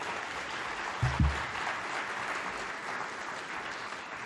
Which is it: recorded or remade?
recorded